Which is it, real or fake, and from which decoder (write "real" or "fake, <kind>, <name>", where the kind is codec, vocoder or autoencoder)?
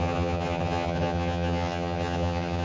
fake, vocoder, HiFi-GAN